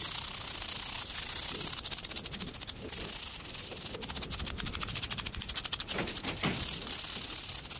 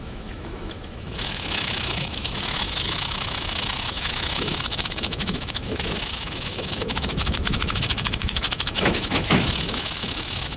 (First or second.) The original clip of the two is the first